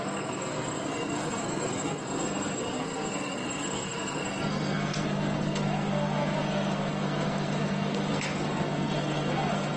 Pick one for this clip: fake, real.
fake